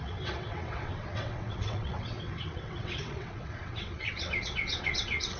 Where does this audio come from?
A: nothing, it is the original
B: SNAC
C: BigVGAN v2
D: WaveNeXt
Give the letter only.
D